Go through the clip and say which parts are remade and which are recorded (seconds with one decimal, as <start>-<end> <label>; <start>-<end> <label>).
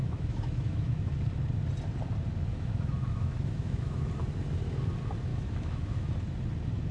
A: 0.0-1.1 remade; 1.1-2.5 recorded; 2.5-4.1 remade; 4.1-5.3 recorded; 5.3-6.1 remade; 6.1-6.9 recorded